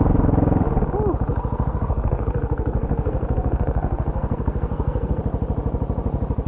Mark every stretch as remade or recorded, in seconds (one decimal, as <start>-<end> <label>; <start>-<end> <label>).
0.0-1.3 recorded; 1.3-5.2 remade; 5.2-6.5 recorded